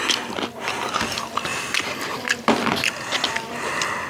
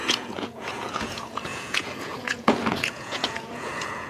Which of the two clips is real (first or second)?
first